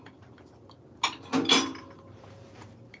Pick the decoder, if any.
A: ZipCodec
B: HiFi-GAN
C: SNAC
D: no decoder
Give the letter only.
D